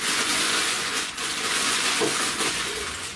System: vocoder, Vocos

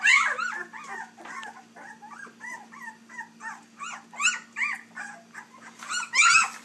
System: none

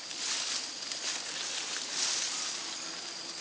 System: none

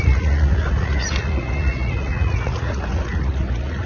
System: vocoder, Vocos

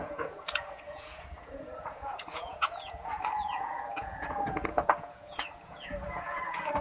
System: vocoder, Vocos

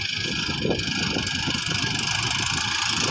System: none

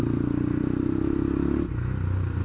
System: none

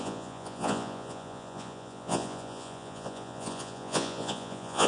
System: vocoder, Vocos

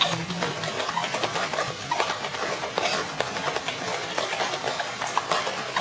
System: none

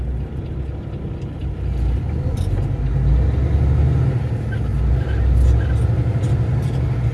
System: none